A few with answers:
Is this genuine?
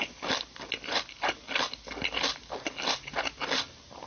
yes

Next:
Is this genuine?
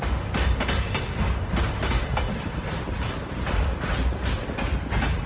yes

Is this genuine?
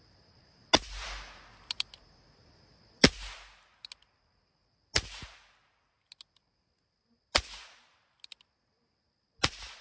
yes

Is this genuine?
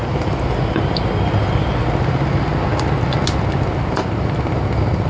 yes